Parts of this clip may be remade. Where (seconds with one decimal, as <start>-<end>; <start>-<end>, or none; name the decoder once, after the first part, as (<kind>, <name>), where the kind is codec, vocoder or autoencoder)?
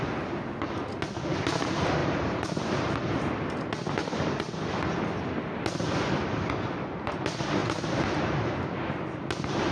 2.0-2.8 (vocoder, BigVGAN v2); 4.0-4.7